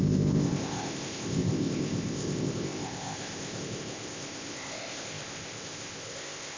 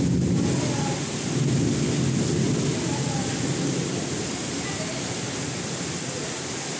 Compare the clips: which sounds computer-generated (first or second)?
first